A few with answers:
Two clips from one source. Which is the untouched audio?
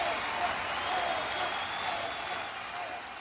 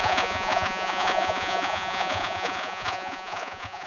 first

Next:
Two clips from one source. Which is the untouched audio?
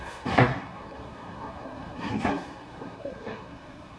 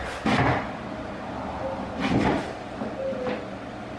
second